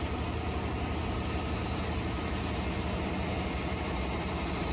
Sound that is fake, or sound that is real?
real